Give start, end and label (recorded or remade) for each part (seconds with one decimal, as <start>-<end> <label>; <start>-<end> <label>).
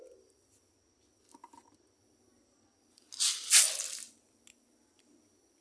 0.0-5.6 recorded